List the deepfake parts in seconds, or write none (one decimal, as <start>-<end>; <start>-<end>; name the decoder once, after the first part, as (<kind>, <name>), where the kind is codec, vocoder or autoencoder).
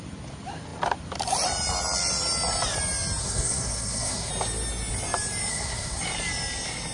3.2-4.3 (codec, SNAC); 5.5-6.0